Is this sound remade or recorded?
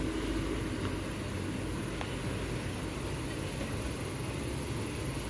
recorded